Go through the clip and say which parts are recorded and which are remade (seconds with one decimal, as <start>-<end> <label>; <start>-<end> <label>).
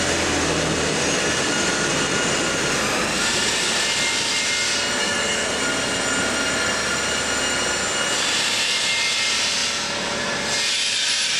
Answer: 0.0-5.0 recorded; 5.0-5.6 remade; 5.6-11.4 recorded